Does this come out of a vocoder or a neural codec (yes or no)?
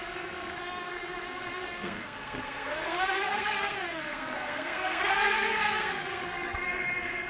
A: yes